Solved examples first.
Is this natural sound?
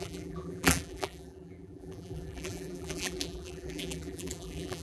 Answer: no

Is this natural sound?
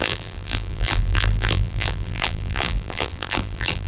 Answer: no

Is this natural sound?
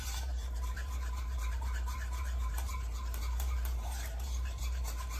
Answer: no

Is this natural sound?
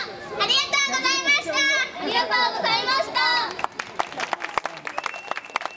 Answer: yes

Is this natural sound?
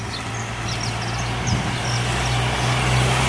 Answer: yes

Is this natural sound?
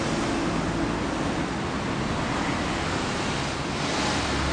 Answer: yes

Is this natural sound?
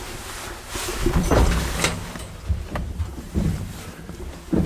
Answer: no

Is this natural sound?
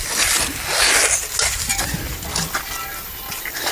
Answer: yes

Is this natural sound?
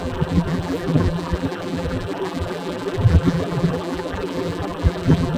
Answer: no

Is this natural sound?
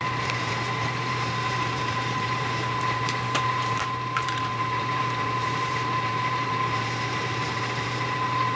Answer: no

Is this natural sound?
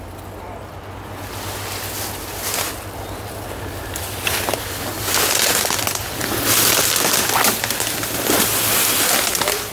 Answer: yes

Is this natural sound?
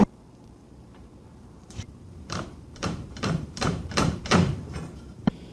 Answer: no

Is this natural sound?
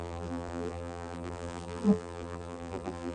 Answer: no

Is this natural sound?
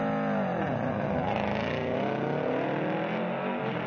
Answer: yes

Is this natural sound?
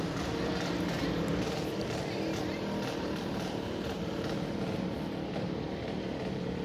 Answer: no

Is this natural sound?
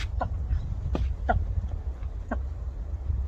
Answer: yes